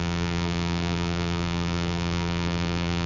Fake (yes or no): yes